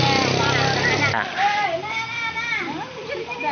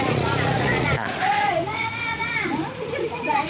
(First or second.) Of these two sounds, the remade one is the second